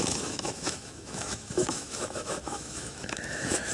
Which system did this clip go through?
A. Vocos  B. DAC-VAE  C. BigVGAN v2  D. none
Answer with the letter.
B